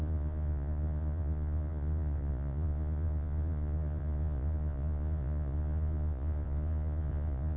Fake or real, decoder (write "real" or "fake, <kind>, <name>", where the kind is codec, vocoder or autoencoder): fake, vocoder, Vocos